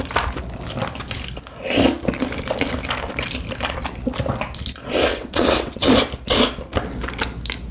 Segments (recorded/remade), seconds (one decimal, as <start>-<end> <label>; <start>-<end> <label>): 0.0-5.1 recorded; 5.1-5.9 remade; 5.9-7.7 recorded